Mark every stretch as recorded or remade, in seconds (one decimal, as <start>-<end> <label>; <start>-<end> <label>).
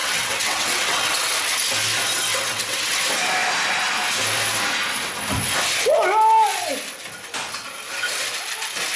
0.0-1.7 remade; 1.7-2.3 recorded; 2.3-3.0 remade; 3.0-9.0 recorded